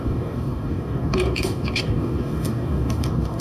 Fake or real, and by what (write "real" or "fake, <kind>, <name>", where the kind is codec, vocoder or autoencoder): fake, codec, DAC